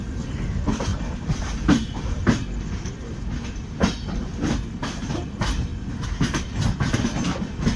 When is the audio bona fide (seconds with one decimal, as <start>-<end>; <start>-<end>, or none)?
5.7-6.4